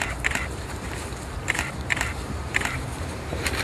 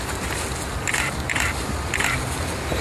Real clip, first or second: second